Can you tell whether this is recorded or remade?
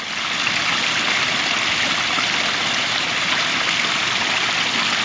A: recorded